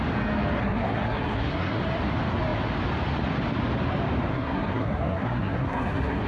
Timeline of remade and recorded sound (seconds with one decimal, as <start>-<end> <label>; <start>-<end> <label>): 0.0-0.6 recorded; 0.6-1.8 remade; 1.8-4.3 recorded; 4.3-6.3 remade